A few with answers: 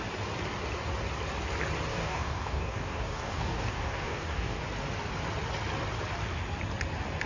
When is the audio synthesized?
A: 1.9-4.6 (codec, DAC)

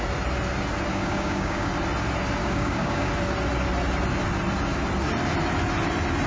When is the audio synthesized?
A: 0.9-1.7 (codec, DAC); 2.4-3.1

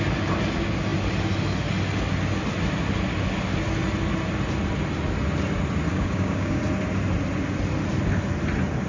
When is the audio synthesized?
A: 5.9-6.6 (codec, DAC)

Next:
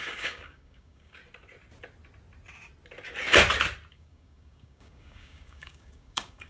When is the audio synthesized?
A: 0.0-1.2 (codec, DAC); 3.9-6.5